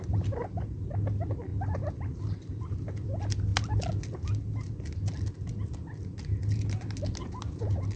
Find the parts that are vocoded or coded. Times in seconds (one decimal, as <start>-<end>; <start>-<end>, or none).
none